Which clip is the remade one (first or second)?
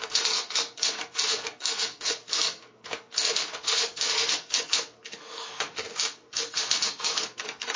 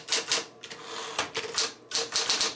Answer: first